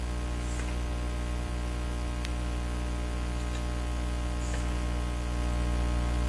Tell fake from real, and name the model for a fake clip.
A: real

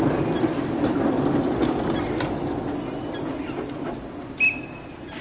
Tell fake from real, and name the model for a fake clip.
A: real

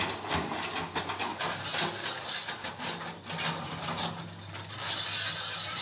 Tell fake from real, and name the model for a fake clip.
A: real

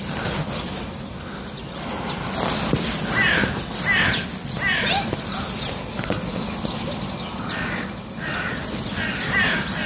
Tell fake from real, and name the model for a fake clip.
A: real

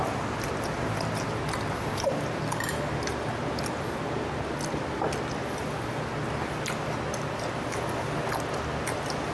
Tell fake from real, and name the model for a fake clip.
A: real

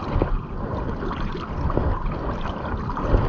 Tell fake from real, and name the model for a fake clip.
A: real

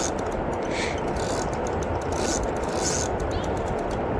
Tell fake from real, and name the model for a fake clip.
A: real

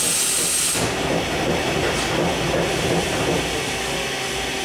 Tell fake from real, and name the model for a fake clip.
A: real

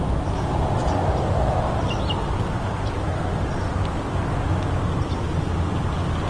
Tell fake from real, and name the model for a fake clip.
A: real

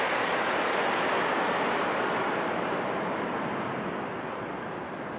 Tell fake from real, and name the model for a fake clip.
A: real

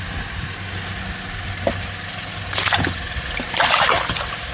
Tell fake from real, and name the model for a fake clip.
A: real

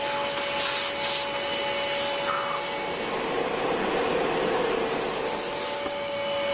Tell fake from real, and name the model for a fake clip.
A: real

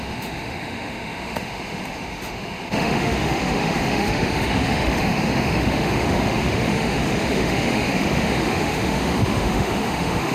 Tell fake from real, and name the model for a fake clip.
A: fake, autoencoder, DAC-VAE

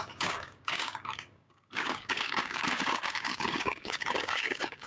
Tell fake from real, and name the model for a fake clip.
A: fake, codec, DAC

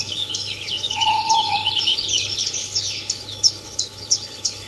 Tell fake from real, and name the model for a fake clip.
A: fake, codec, HILCodec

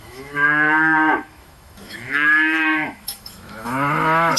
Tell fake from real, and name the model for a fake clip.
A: fake, autoencoder, DAC-VAE